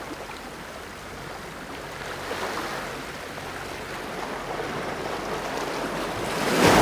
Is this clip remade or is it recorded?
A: recorded